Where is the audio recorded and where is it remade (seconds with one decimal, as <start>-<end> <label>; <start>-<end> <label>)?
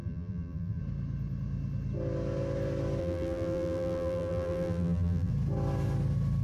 0.0-0.8 remade; 0.8-3.0 recorded; 3.0-5.3 remade; 5.3-6.4 recorded